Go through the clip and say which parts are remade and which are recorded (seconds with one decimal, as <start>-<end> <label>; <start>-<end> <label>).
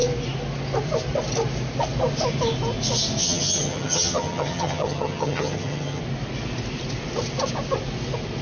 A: 0.0-3.2 recorded; 3.2-6.0 remade; 6.0-8.4 recorded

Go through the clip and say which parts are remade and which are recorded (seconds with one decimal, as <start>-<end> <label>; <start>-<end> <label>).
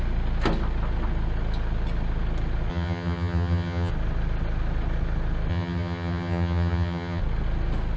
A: 0.0-2.7 recorded; 2.7-3.9 remade; 3.9-5.5 recorded; 5.5-7.2 remade; 7.2-8.0 recorded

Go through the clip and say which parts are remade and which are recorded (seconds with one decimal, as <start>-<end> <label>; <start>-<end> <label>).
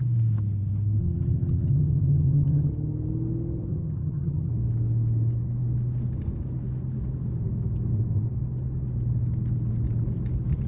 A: 0.0-1.0 recorded; 1.0-2.7 remade; 2.7-3.7 recorded; 3.7-4.5 remade; 4.5-10.7 recorded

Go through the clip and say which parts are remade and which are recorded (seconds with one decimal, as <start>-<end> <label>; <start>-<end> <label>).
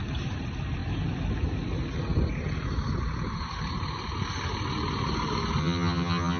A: 0.0-5.6 recorded; 5.6-6.4 remade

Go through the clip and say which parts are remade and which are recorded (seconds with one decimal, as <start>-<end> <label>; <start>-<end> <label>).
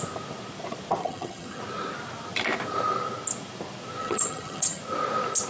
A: 0.0-1.0 recorded; 1.0-1.6 remade; 1.6-4.0 recorded; 4.0-4.8 remade; 4.8-5.5 recorded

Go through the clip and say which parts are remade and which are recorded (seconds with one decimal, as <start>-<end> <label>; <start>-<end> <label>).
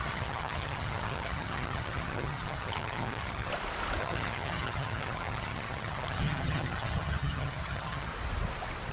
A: 0.0-3.5 remade; 3.5-4.0 recorded; 4.0-8.1 remade; 8.1-8.9 recorded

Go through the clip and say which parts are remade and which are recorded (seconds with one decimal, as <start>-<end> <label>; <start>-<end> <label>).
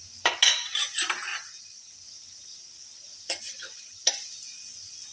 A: 0.0-5.1 recorded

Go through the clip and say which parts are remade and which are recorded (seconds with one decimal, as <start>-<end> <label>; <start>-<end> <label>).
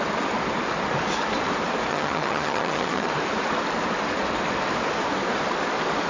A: 0.0-1.9 recorded; 1.9-3.1 remade; 3.1-6.1 recorded